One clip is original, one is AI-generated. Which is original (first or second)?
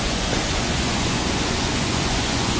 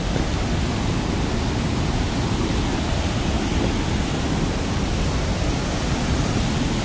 second